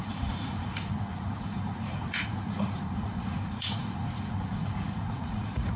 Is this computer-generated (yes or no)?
yes